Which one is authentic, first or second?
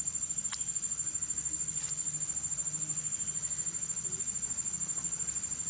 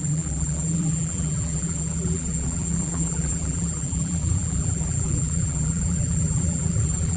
first